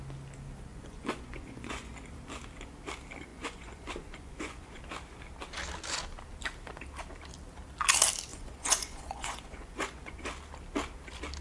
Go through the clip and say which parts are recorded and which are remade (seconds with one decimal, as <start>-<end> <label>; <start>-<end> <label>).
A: 0.0-0.7 recorded; 0.7-1.9 remade; 1.9-3.3 recorded; 3.3-4.8 remade; 4.8-8.3 recorded; 8.3-10.3 remade; 10.3-11.4 recorded

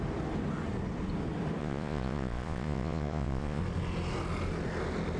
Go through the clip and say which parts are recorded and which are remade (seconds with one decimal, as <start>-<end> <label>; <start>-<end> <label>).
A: 0.0-1.6 recorded; 1.6-3.6 remade; 3.6-5.2 recorded

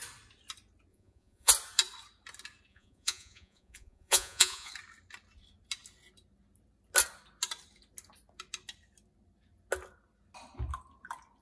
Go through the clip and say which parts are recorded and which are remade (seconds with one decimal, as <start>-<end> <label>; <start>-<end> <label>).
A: 0.0-0.9 recorded; 0.9-1.5 remade; 1.5-2.7 recorded; 2.7-4.7 remade; 4.7-11.4 recorded

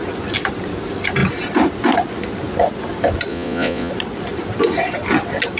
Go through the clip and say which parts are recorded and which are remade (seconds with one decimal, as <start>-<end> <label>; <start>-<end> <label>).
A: 0.0-3.3 recorded; 3.3-3.9 remade; 3.9-5.6 recorded

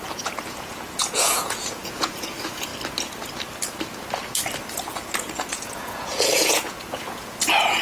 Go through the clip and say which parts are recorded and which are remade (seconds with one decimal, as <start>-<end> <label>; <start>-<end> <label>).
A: 0.0-2.7 remade; 2.7-4.7 recorded; 4.7-7.8 remade

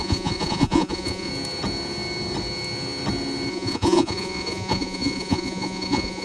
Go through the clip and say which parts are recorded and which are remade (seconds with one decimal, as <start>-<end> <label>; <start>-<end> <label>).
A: 0.0-1.3 remade; 1.3-3.5 recorded; 3.5-6.2 remade

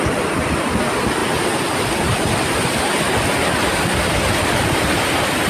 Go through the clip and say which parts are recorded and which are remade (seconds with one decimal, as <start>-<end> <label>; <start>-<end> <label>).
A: 0.0-5.5 recorded

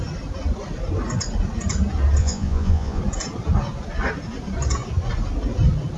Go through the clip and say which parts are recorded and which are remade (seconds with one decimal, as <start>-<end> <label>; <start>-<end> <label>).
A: 0.0-2.2 recorded; 2.2-3.0 remade; 3.0-6.0 recorded